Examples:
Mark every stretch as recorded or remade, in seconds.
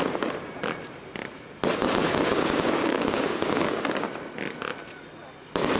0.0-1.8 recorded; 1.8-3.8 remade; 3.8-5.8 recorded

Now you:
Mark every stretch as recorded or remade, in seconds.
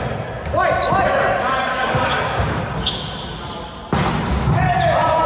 0.0-1.7 recorded; 1.7-2.6 remade; 2.6-5.3 recorded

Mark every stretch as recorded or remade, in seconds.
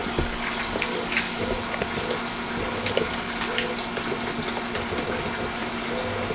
0.0-1.5 remade; 1.5-2.8 recorded; 2.8-3.5 remade; 3.5-6.3 recorded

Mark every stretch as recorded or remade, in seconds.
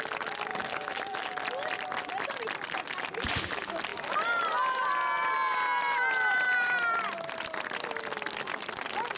0.0-0.5 recorded; 0.5-1.3 remade; 1.3-9.2 recorded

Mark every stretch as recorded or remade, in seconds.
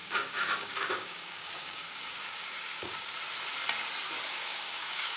0.0-3.1 remade; 3.1-4.3 recorded; 4.3-5.2 remade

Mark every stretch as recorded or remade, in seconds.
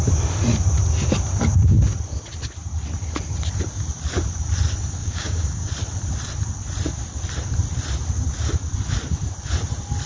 0.0-5.0 recorded; 5.0-5.7 remade; 5.7-10.1 recorded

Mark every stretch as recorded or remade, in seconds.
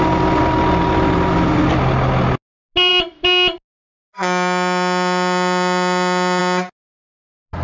0.0-7.6 recorded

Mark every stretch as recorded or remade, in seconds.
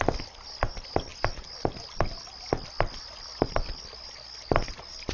0.0-5.1 recorded